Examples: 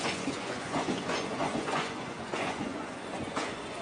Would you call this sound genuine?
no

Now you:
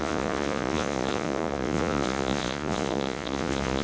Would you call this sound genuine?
no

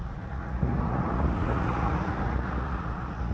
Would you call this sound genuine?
no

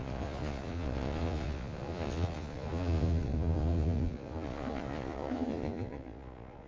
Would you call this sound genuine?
no